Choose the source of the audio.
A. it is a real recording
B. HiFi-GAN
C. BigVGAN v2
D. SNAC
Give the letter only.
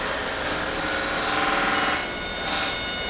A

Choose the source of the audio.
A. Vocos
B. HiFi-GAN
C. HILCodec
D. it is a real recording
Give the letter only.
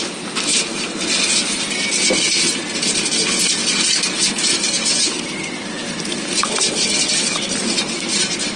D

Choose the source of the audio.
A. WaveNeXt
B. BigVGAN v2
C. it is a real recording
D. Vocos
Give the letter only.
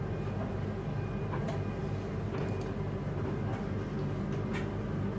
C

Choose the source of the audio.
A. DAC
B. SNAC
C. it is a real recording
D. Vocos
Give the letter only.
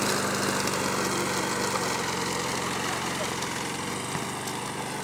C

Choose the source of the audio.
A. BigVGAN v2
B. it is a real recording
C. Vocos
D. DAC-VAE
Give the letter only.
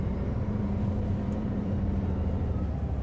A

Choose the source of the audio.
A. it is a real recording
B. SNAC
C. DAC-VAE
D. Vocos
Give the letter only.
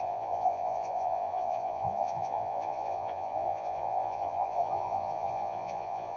D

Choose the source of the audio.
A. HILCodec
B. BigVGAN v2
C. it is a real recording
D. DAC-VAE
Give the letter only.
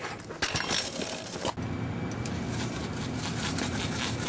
C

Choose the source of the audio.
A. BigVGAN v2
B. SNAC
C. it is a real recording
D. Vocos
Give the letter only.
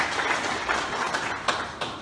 C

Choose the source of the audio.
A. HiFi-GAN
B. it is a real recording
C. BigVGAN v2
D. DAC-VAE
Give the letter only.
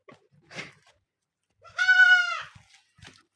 B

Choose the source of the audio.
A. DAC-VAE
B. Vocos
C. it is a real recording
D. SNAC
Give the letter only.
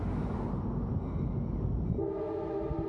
C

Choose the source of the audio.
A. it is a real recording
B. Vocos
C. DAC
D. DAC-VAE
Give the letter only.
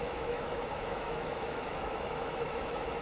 D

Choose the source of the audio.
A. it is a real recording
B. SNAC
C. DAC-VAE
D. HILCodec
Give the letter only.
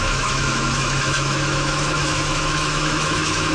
C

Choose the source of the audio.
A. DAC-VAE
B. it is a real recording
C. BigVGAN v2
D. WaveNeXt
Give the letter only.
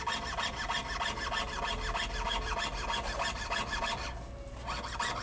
B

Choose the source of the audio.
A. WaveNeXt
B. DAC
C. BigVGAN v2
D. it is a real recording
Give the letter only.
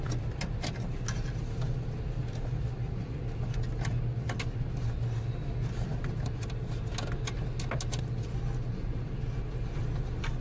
D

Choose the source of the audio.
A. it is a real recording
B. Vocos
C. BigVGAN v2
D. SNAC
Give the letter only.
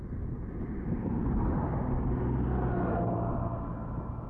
A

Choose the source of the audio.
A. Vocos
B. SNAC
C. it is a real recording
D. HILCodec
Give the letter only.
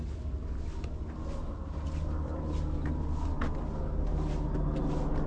C